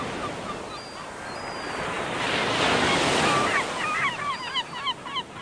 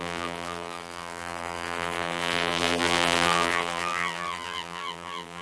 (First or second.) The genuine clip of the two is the first